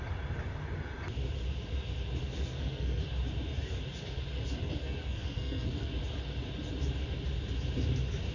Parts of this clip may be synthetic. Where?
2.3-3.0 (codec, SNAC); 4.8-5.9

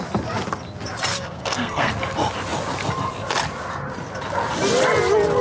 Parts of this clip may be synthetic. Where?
1.1-1.9 (codec, SNAC)

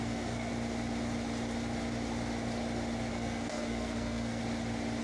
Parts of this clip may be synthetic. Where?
0.0-0.5 (codec, SNAC); 3.1-4.4